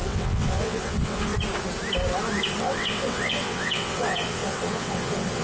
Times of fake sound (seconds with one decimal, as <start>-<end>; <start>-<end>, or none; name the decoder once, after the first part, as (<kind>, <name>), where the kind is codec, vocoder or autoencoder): 0.0-1.3 (vocoder, WaveNeXt); 2.6-5.4